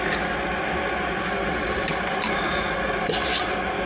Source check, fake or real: real